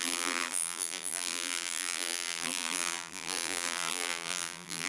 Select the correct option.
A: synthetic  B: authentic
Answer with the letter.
A